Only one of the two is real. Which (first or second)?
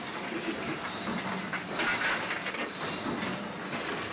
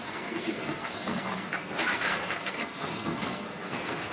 first